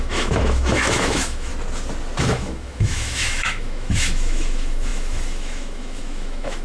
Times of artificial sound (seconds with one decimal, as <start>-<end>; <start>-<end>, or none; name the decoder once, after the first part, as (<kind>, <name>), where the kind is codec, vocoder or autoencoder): 0.0-1.5 (autoencoder, DAC-VAE); 2.2-6.6